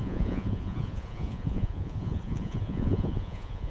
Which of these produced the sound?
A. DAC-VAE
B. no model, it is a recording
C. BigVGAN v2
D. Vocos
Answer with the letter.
D